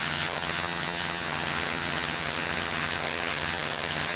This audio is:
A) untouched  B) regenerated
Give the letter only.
B